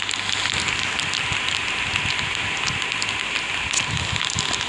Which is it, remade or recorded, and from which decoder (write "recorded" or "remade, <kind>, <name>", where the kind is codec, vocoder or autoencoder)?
recorded